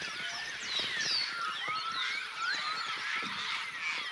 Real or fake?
real